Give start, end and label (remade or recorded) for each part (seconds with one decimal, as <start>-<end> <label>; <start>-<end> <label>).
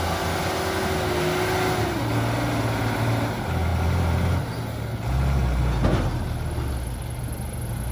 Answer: 0.0-7.9 recorded